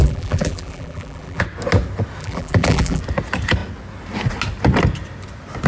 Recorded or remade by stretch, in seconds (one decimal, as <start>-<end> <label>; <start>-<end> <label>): 0.0-1.4 remade; 1.4-2.2 recorded; 2.2-3.0 remade; 3.0-5.7 recorded